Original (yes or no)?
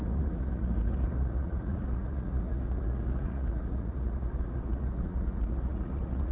no